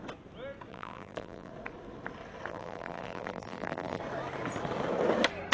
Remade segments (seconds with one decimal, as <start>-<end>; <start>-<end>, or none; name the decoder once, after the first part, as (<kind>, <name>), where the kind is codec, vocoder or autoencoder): 0.7-1.5 (vocoder, BigVGAN v2); 2.5-4.0